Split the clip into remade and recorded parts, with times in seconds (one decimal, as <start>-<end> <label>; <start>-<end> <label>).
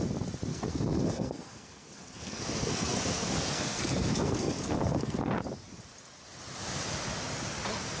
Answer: 0.0-0.5 recorded; 0.5-5.3 remade; 5.3-8.0 recorded